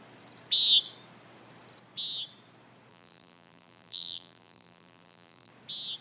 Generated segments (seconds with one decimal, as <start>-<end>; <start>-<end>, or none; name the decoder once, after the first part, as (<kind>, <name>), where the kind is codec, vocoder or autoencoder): 2.9-5.5 (vocoder, BigVGAN v2)